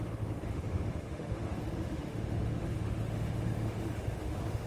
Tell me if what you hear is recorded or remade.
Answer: remade